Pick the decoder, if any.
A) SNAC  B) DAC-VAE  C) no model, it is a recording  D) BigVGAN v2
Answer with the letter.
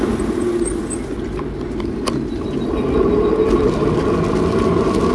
C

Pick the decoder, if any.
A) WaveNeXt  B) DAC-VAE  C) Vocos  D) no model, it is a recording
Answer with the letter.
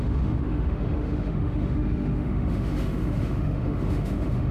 B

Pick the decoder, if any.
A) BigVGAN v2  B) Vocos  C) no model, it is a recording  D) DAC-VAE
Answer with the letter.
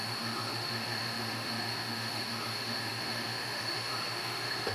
D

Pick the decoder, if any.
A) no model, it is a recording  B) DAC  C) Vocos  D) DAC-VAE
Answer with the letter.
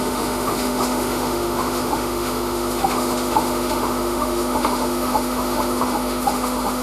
D